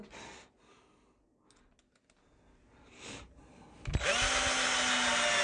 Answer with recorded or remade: recorded